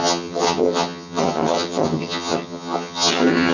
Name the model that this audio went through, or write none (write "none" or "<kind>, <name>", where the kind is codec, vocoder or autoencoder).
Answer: vocoder, HiFi-GAN